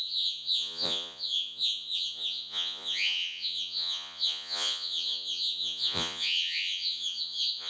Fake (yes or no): yes